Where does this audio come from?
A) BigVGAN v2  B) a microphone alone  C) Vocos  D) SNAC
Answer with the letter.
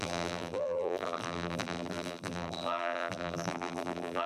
A